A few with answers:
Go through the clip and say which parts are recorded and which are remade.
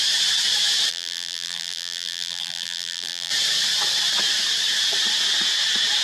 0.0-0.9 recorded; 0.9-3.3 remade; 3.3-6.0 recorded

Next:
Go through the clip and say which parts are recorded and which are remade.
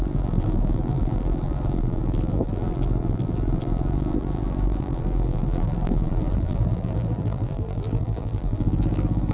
0.0-9.3 remade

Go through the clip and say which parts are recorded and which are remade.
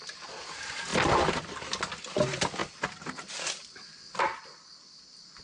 0.0-5.4 remade